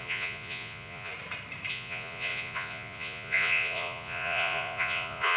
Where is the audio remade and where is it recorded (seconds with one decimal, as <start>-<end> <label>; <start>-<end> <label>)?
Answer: 0.0-1.1 remade; 1.1-1.7 recorded; 1.7-5.4 remade